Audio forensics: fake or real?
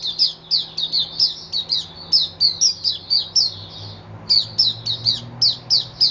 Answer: real